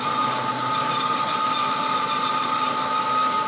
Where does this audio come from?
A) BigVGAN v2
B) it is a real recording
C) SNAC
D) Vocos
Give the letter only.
B